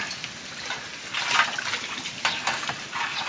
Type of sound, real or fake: real